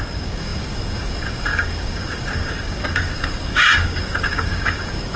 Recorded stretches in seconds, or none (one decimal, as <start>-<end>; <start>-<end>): none